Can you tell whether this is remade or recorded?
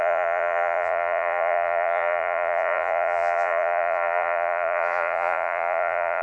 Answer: remade